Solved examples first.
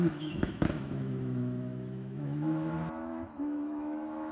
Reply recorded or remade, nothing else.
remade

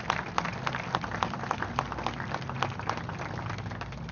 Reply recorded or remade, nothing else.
recorded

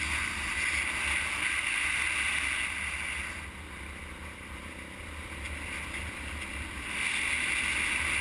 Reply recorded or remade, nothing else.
recorded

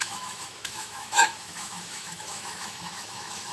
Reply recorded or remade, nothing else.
remade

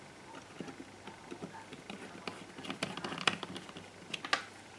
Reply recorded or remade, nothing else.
recorded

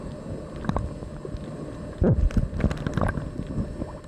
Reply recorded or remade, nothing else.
recorded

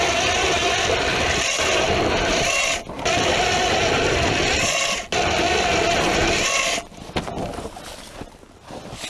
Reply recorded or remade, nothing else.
recorded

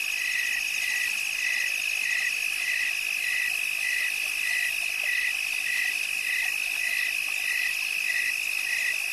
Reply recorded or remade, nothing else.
recorded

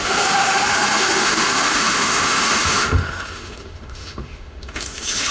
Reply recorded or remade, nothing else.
remade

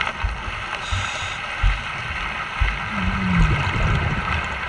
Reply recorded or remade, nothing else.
recorded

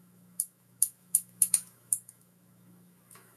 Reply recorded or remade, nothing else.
remade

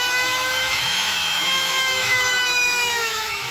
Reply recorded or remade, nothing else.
remade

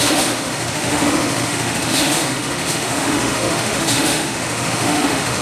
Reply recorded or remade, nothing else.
remade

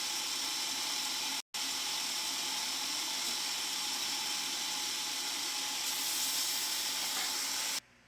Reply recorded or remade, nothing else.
recorded